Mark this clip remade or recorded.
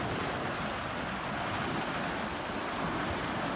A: recorded